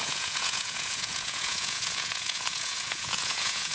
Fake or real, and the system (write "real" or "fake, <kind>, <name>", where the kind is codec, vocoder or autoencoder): fake, vocoder, Vocos